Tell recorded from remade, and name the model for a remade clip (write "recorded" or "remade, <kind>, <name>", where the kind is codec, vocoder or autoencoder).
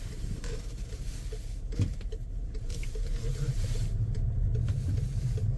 remade, vocoder, BigVGAN v2